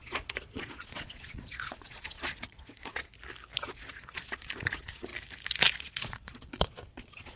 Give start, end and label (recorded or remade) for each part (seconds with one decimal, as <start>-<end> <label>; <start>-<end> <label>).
0.0-3.1 remade; 3.1-3.6 recorded; 3.6-5.1 remade; 5.1-5.8 recorded; 5.8-7.4 remade